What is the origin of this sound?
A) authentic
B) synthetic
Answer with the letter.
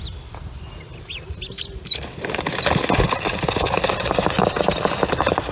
A